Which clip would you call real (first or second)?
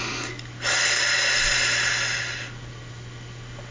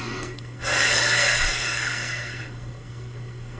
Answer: first